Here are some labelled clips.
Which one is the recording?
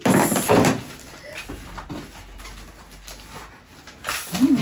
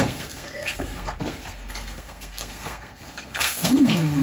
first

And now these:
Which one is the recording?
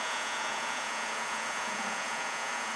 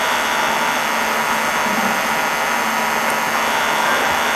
second